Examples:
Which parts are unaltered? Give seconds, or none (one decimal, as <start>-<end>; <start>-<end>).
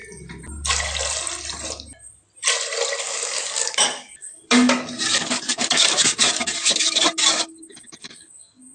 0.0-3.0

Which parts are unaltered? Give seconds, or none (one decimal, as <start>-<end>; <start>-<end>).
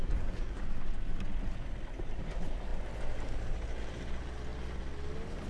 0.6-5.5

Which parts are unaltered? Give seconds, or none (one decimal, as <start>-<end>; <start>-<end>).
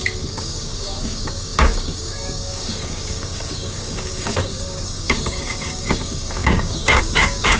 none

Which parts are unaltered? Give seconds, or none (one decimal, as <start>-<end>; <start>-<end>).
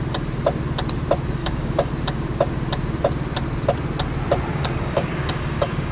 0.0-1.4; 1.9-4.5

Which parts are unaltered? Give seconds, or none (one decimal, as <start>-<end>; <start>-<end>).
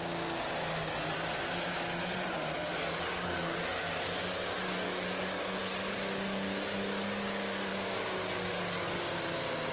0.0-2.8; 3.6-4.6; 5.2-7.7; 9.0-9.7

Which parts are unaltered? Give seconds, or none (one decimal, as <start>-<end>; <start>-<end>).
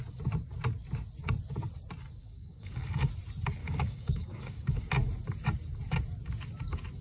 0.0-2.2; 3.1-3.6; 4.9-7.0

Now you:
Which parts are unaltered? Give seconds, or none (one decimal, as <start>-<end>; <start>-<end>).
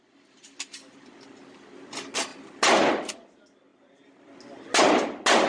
0.0-5.5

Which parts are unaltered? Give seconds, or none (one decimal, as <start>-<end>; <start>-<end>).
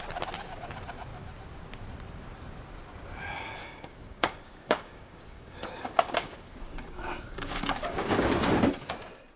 0.0-3.6; 8.3-9.4